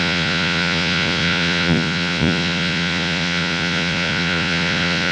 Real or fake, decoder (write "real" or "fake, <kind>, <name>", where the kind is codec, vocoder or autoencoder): fake, vocoder, Vocos